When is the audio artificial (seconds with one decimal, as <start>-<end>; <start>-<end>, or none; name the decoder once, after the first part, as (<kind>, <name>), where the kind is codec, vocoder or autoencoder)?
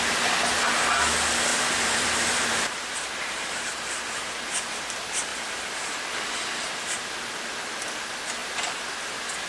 1.5-3.7 (vocoder, BigVGAN v2); 8.4-8.9